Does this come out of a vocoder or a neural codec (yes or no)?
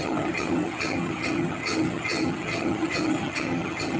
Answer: yes